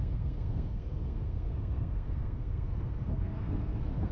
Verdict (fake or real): fake